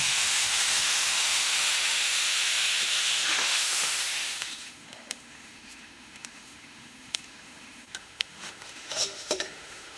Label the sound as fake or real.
fake